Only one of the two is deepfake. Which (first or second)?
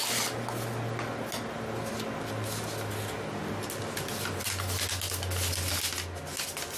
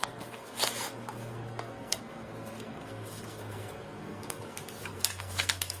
second